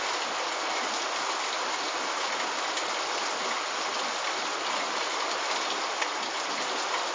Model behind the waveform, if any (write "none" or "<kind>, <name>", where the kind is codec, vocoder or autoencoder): none